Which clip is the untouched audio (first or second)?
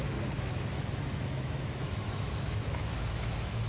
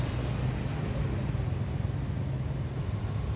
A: second